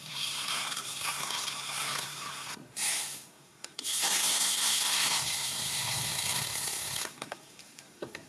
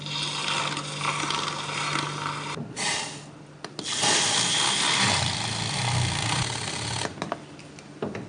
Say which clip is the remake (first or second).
first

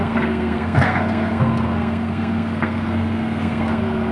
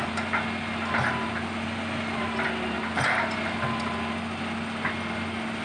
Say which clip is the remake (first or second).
first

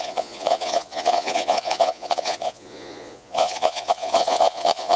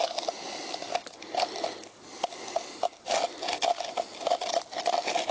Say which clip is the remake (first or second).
first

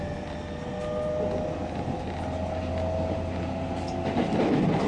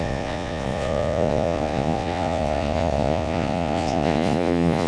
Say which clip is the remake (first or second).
second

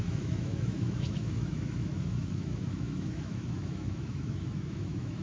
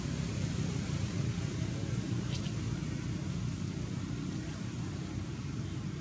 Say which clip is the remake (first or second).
first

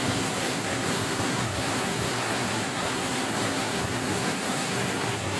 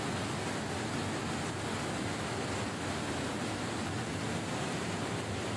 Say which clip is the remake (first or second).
first